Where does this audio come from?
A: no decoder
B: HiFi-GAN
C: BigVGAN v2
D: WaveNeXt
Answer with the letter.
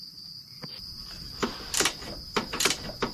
C